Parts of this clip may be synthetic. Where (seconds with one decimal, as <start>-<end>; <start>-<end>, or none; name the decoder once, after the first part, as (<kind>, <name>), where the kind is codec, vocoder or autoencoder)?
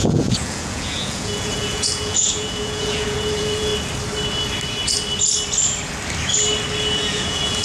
0.0-3.7 (vocoder, Vocos); 7.0-7.6